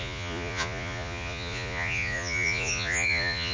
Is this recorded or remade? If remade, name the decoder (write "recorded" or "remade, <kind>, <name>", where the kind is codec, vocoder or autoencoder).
remade, vocoder, Vocos